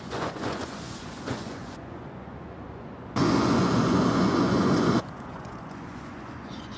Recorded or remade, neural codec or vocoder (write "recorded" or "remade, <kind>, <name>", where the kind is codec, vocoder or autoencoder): remade, vocoder, Vocos